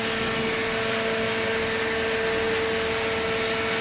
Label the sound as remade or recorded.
recorded